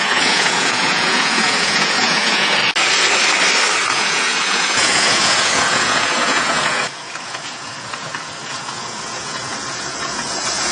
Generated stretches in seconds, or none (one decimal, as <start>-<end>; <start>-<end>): 0.0-2.6; 3.9-10.7